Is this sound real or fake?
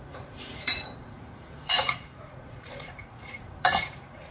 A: fake